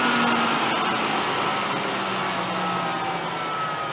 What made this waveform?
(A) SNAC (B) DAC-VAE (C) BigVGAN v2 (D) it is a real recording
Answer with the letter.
D